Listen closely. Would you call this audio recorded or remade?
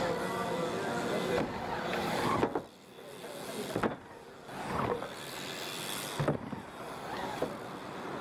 recorded